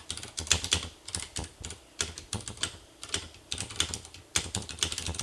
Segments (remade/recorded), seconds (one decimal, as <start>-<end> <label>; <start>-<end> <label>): 0.0-5.2 remade